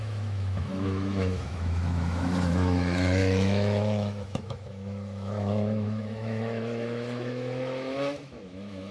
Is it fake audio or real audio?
fake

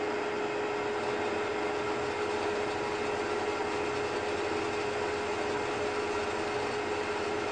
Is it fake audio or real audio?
real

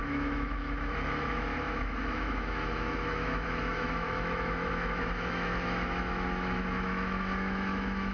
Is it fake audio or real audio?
fake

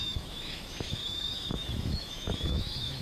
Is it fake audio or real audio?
fake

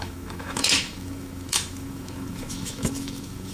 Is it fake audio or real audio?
fake